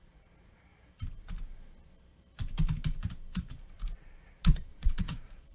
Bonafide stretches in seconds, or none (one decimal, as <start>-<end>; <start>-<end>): 0.7-4.0